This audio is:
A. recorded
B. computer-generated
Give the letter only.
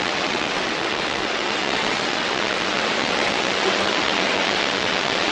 B